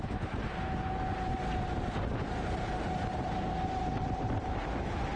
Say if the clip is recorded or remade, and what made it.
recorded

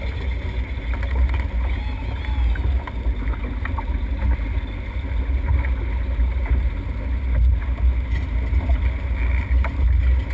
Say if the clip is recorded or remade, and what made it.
recorded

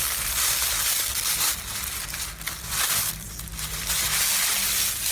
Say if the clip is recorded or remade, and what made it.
recorded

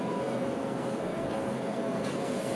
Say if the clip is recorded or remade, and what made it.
remade, codec, SNAC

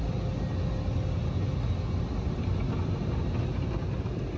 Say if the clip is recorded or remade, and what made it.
recorded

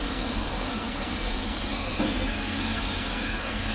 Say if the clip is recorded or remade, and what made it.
remade, codec, SNAC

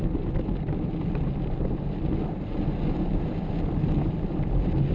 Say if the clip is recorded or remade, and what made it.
recorded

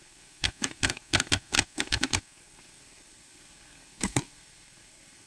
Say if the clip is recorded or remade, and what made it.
remade, codec, SNAC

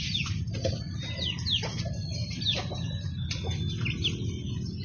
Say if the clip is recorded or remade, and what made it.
recorded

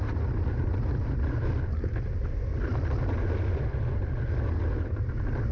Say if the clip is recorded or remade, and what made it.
recorded